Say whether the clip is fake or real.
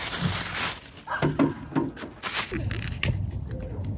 real